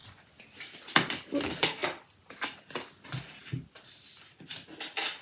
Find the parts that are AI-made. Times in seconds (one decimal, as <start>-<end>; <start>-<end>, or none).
0.0-0.6; 1.8-2.6